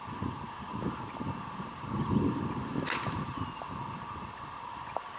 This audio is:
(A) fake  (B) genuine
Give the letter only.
B